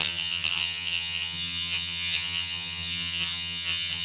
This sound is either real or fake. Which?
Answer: fake